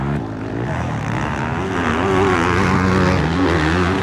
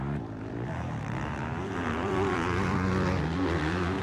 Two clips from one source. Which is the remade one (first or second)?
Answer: second